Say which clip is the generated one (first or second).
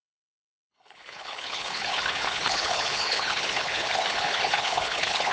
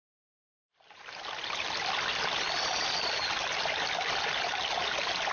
first